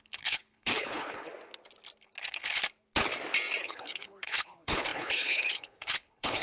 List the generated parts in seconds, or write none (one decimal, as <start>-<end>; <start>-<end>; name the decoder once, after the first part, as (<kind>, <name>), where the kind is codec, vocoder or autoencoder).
0.0-1.3 (codec, HILCodec); 2.2-2.6; 3.6-6.4